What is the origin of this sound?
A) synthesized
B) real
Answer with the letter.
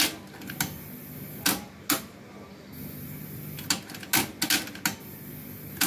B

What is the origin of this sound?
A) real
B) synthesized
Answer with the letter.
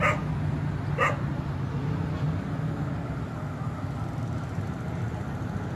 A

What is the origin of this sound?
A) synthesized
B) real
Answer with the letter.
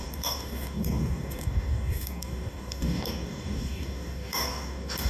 A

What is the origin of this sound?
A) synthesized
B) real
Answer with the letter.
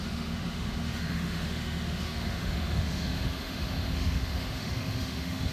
A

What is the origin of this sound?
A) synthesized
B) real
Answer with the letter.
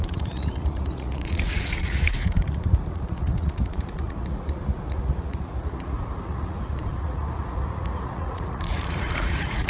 A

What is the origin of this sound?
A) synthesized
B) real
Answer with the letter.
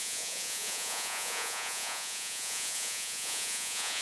A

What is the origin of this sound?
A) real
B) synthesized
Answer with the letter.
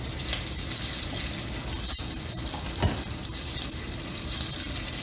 A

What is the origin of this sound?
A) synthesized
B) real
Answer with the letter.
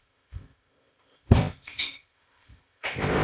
A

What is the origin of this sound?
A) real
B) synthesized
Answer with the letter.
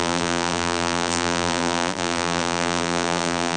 B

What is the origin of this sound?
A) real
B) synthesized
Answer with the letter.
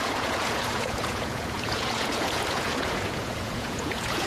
B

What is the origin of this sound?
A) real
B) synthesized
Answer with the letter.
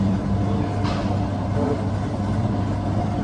A